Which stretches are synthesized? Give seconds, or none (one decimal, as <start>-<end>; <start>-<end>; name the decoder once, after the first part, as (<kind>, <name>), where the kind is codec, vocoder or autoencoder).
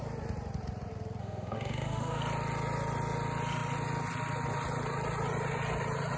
1.2-2.2 (autoencoder, DAC-VAE)